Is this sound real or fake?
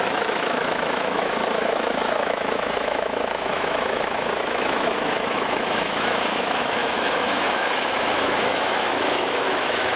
fake